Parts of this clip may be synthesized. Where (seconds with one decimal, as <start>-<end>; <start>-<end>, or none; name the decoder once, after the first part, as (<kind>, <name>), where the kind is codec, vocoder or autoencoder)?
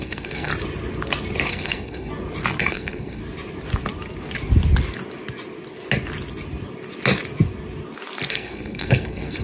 0.0-0.5 (codec, SNAC); 1.5-2.1; 2.6-3.2; 8.3-9.4